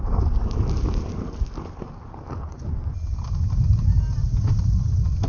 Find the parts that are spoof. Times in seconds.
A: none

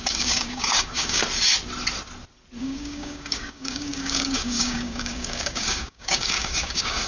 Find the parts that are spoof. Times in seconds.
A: 0.0-1.2; 2.6-7.1

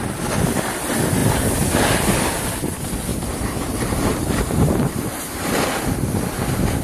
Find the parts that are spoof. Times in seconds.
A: 3.1-5.2

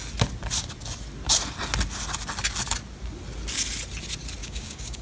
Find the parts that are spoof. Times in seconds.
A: 4.4-5.0

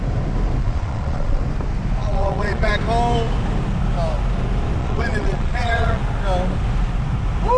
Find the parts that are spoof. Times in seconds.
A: 0.6-1.4; 2.0-2.7; 4.8-6.0

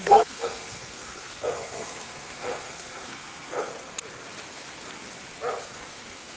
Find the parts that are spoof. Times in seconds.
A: 0.0-3.7; 5.6-6.4

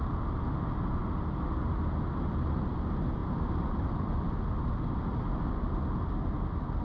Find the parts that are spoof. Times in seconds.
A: 3.2-3.9

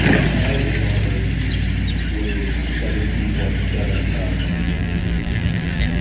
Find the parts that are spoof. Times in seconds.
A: 4.5-6.0